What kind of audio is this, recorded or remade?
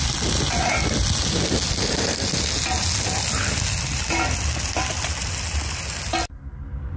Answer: recorded